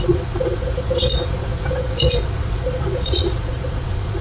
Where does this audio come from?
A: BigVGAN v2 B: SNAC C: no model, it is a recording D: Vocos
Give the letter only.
D